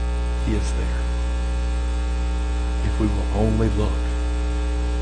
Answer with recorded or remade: recorded